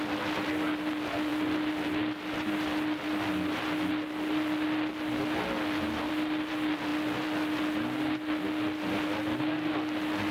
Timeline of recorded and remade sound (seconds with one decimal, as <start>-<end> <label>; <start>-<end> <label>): 0.0-10.3 recorded